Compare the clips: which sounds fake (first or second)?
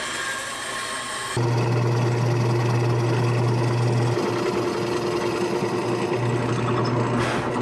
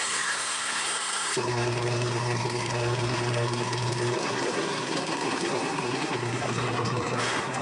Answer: second